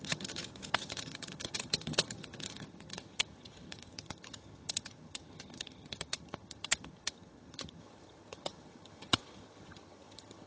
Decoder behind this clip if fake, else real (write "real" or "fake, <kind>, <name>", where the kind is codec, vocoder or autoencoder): fake, vocoder, HiFi-GAN